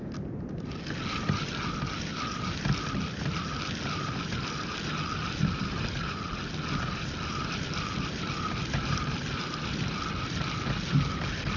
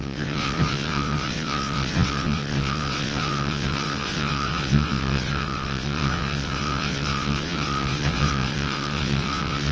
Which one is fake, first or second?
second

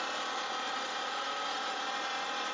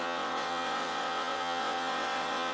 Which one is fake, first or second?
second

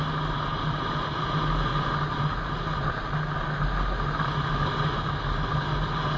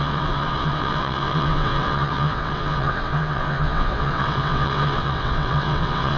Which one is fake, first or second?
second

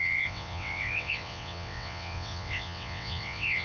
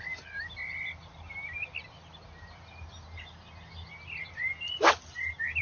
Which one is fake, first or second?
first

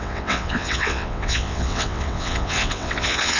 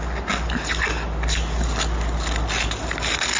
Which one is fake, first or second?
first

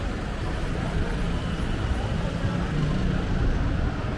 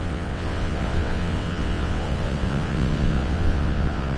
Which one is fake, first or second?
second